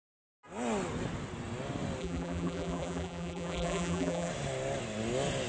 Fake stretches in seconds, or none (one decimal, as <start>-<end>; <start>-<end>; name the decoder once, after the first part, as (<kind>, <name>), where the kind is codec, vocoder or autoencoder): 2.0-4.3 (vocoder, BigVGAN v2)